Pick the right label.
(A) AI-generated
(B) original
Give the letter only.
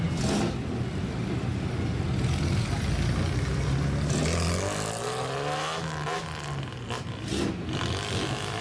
B